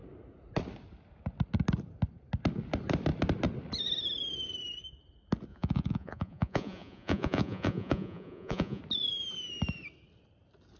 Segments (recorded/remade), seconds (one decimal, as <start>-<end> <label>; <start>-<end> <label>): 0.0-5.5 recorded; 5.5-8.8 remade; 8.8-10.8 recorded